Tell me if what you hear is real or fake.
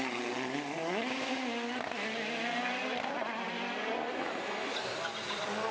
real